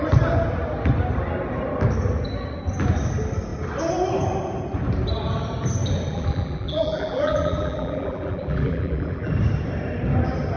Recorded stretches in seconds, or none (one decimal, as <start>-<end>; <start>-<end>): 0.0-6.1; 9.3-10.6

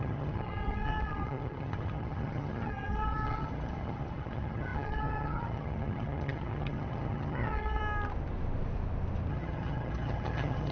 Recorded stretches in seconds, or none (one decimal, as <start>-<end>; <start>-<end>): 7.8-9.3

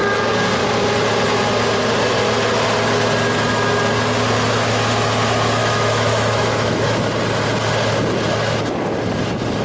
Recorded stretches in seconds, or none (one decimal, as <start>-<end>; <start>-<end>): 0.0-5.6; 6.8-9.6

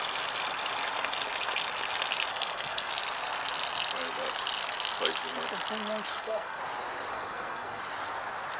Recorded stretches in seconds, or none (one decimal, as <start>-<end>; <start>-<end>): 0.0-2.3; 2.9-6.1; 6.6-7.1; 7.8-8.6

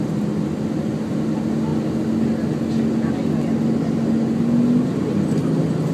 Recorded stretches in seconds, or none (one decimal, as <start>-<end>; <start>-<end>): 0.0-5.9

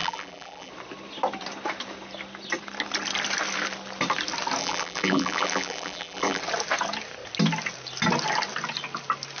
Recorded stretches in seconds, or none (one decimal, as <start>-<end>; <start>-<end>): 0.7-4.6; 6.4-9.4

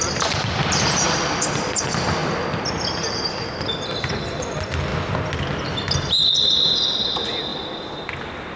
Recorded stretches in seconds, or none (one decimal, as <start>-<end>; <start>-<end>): 2.2-4.5; 4.9-6.2

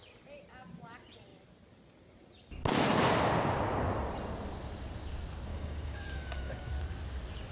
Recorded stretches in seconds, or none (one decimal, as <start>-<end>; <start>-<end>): 0.0-5.5; 6.7-7.5